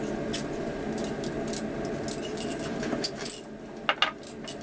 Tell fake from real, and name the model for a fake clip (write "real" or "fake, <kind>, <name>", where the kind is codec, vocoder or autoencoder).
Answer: real